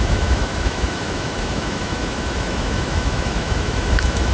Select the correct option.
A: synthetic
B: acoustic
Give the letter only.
A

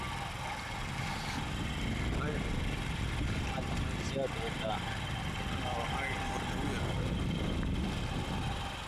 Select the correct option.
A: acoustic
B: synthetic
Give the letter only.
A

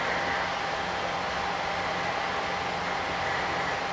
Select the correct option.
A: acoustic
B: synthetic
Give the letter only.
A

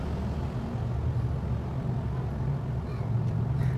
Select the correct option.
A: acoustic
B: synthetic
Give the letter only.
A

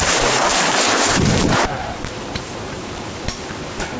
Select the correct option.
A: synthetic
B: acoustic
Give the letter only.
A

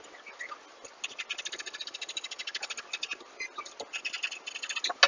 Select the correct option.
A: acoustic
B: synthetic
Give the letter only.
A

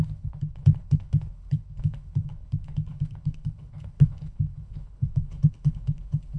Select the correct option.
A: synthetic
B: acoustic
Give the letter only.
A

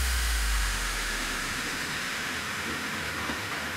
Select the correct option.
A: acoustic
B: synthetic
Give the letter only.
B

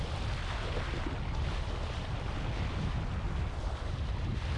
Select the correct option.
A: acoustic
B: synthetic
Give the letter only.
A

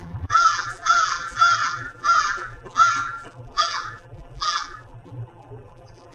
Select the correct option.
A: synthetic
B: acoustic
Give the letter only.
A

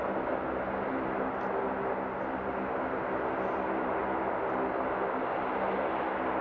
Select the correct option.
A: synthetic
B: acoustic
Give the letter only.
B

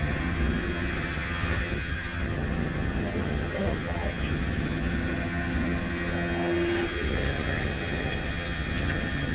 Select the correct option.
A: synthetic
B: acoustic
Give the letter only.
A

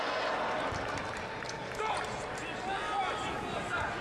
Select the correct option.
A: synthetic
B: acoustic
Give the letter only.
B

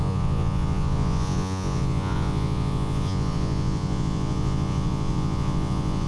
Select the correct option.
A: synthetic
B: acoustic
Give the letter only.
A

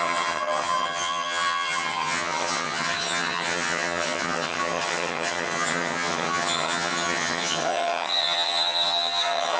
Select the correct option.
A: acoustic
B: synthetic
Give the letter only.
B